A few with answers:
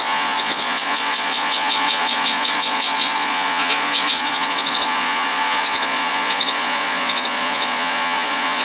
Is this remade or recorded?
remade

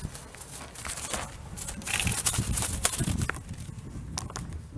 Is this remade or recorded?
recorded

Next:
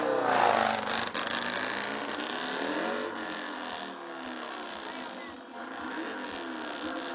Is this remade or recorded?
recorded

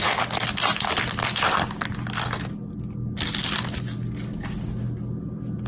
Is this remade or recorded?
recorded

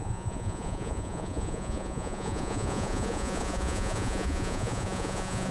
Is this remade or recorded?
remade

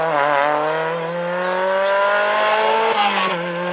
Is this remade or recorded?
recorded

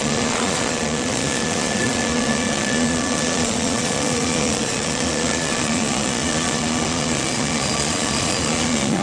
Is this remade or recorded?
remade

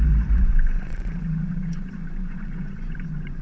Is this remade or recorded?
remade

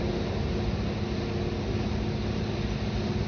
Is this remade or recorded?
recorded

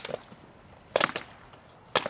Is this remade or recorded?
recorded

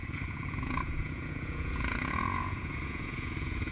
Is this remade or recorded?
remade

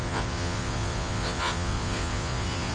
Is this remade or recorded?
remade